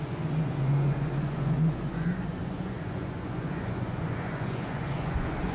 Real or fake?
fake